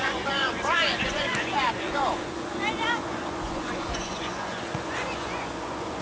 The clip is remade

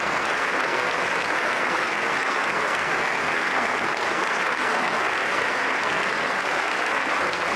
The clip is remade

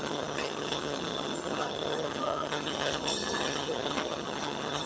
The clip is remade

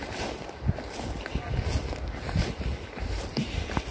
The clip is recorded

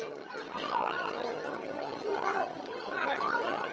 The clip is remade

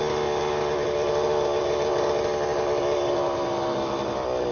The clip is recorded